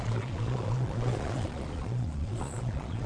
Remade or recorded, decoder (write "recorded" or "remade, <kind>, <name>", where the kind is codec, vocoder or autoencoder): remade, vocoder, Vocos